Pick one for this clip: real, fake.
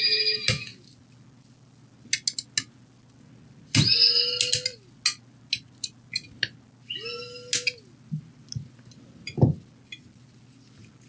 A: real